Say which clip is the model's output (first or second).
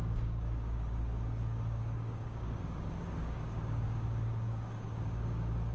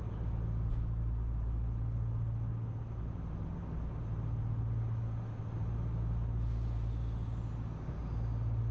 first